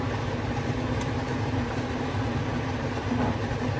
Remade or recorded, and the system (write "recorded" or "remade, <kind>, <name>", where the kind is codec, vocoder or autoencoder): remade, vocoder, BigVGAN v2